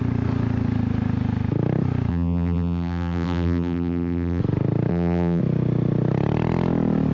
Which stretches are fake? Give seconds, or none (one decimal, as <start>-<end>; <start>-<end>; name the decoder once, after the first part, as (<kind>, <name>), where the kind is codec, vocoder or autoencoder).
2.1-4.4 (vocoder, BigVGAN v2); 4.9-5.4